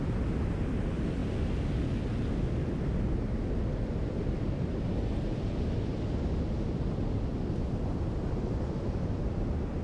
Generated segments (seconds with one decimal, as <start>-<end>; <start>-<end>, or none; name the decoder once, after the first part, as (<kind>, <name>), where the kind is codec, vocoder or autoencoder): none